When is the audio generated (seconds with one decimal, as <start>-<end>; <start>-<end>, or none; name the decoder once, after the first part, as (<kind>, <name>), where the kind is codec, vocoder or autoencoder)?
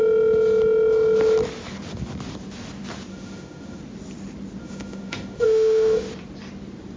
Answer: 3.1-3.8 (autoencoder, DAC-VAE); 4.6-6.0